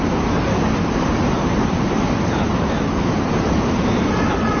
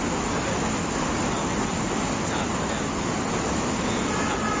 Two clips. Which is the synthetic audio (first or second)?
first